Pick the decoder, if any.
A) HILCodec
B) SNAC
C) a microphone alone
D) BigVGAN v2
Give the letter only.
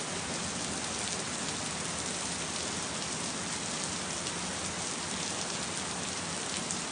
C